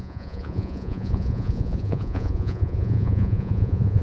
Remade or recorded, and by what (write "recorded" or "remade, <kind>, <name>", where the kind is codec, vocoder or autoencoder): remade, vocoder, Vocos